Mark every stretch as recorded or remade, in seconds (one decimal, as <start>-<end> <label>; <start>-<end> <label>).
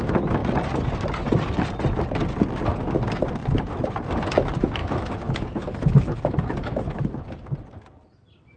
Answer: 0.0-4.8 recorded; 4.8-7.1 remade; 7.1-8.6 recorded